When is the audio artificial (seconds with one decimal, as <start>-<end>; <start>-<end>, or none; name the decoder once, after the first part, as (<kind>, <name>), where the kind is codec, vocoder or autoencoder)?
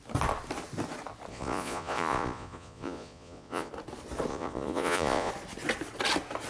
1.3-3.7 (vocoder, Vocos); 4.3-5.3